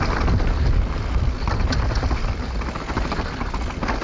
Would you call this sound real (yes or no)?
yes